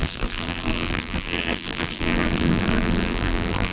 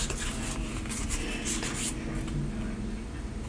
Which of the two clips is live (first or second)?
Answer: second